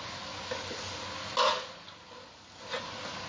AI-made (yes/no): no